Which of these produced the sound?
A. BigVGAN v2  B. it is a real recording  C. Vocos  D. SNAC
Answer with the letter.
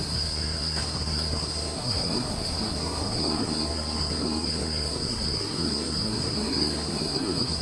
D